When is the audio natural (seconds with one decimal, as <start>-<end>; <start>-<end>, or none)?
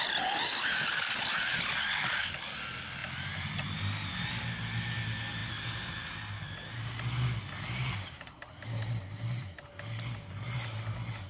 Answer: 0.0-11.3